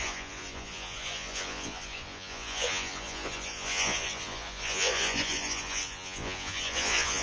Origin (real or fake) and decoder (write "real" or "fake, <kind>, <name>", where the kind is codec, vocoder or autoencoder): fake, vocoder, Vocos